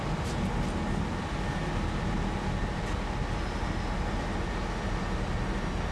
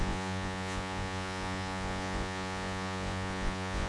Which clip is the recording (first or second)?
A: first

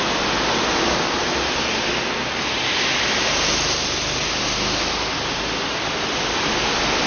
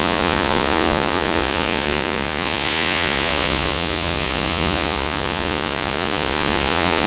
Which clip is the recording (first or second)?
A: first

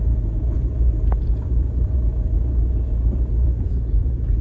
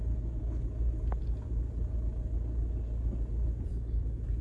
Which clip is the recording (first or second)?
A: second